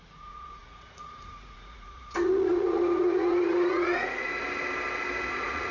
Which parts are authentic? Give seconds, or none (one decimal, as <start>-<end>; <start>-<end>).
4.3-5.3